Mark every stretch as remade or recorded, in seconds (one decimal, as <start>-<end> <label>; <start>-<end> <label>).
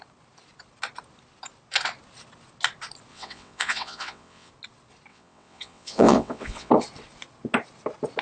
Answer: 0.0-3.1 recorded; 3.1-4.5 remade; 4.5-5.1 recorded; 5.1-6.7 remade; 6.7-8.2 recorded